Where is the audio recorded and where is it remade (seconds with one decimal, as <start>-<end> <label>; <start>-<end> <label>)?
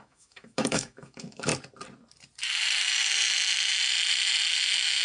0.0-1.5 remade; 1.5-4.5 recorded; 4.5-5.0 remade